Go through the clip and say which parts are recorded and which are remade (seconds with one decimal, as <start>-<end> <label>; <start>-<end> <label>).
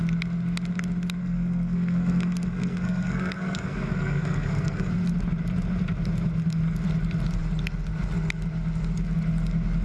0.0-1.2 recorded; 1.2-4.9 remade; 4.9-9.8 recorded